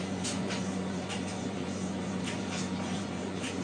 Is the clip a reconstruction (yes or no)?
yes